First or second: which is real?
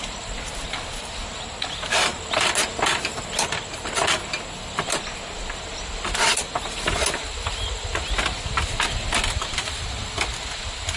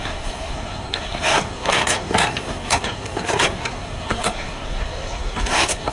first